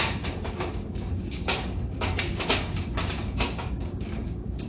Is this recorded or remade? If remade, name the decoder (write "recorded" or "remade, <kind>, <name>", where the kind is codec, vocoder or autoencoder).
remade, codec, DAC